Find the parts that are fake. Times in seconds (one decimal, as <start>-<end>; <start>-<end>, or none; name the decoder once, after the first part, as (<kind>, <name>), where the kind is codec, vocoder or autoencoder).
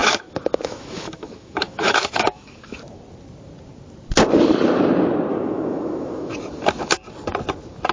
0.0-2.7 (autoencoder, DAC-VAE); 5.3-6.3